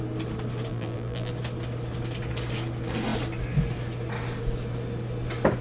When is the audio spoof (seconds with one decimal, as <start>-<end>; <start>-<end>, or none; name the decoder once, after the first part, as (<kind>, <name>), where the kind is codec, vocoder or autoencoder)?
0.7-1.3 (vocoder, BigVGAN v2)